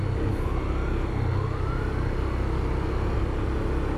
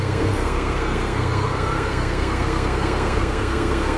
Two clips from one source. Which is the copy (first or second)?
second